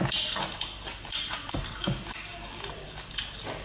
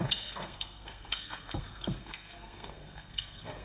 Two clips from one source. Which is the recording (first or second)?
first